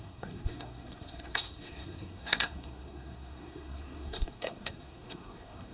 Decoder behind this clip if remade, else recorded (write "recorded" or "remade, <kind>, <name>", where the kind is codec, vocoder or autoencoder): remade, codec, SNAC